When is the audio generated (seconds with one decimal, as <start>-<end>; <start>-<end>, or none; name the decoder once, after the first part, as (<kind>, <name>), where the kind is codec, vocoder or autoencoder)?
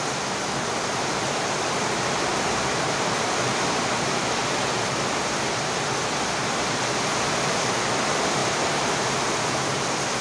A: 2.3-4.2 (vocoder, BigVGAN v2); 8.4-9.6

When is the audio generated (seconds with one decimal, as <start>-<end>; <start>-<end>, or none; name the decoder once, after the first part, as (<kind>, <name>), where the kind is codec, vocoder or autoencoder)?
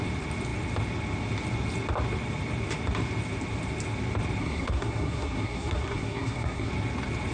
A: 4.4-6.7 (codec, SNAC)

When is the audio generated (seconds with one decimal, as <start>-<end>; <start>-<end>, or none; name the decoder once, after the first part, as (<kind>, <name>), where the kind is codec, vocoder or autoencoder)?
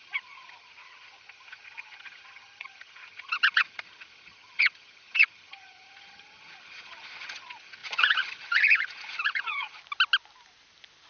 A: 0.0-9.8 (vocoder, HiFi-GAN)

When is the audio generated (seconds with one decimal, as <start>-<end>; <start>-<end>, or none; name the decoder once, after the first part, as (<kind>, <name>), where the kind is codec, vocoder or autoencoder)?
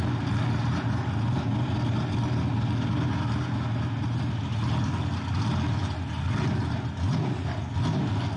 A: none